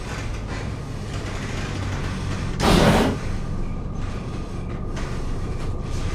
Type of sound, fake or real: real